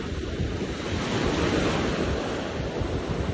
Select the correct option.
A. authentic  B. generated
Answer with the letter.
A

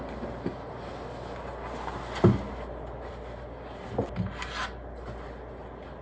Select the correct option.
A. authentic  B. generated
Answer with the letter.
A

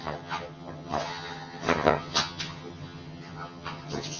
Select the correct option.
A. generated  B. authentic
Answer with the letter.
A